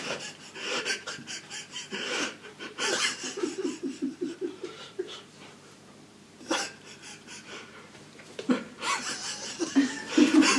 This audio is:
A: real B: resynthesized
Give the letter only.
B